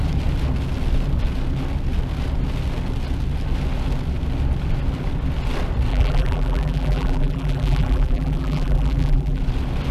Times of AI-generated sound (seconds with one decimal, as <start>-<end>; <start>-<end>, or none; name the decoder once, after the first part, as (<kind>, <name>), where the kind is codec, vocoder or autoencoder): 5.9-9.4 (vocoder, BigVGAN v2)